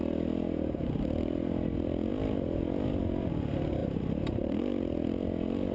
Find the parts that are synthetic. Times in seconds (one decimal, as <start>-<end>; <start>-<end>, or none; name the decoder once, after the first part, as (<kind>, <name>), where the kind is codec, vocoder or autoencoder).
3.8-4.6 (vocoder, BigVGAN v2)